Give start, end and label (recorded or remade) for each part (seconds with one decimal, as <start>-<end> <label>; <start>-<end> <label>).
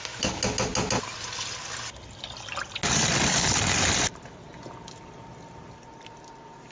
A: 0.0-6.7 recorded